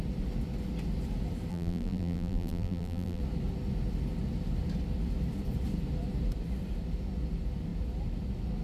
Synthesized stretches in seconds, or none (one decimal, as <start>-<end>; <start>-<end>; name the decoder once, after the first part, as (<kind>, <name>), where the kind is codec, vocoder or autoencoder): 1.5-3.2 (vocoder, BigVGAN v2)